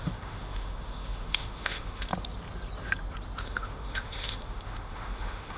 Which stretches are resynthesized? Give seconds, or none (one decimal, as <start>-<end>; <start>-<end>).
0.0-2.1; 3.4-5.6